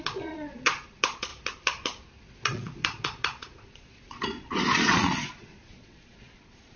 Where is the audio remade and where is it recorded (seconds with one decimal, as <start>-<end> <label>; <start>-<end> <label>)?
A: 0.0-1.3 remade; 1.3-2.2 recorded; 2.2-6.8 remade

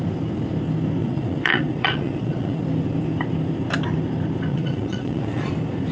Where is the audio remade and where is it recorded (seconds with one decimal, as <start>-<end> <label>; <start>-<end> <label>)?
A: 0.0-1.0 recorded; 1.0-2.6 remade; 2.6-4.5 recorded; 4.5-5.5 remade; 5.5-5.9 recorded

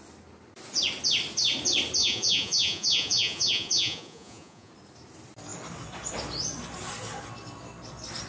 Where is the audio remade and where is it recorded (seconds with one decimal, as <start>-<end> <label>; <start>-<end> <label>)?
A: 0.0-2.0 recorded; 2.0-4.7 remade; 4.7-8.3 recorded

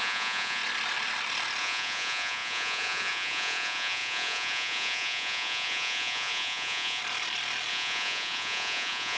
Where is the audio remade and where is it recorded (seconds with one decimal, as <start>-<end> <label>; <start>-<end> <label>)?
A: 0.0-0.6 remade; 0.6-1.6 recorded; 1.6-7.0 remade; 7.0-7.7 recorded; 7.7-9.2 remade

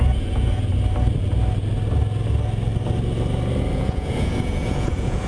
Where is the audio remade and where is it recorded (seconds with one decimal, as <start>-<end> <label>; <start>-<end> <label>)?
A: 0.0-0.7 remade; 0.7-3.7 recorded; 3.7-5.3 remade

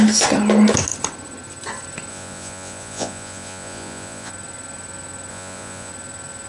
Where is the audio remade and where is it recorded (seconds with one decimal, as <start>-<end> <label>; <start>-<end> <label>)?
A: 0.0-2.1 recorded; 2.1-4.3 remade; 4.3-5.3 recorded; 5.3-5.9 remade; 5.9-6.5 recorded

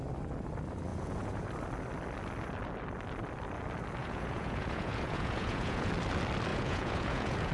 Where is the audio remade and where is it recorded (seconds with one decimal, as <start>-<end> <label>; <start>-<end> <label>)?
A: 0.0-0.9 recorded; 0.9-1.5 remade; 1.5-4.0 recorded; 4.0-5.9 remade; 5.9-6.5 recorded; 6.5-7.5 remade